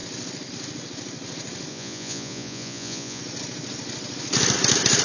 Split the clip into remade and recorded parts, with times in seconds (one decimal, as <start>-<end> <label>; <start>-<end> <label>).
0.0-1.7 recorded; 1.7-3.2 remade; 3.2-5.0 recorded